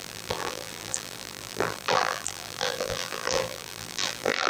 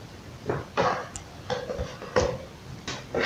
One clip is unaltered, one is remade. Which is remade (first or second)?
first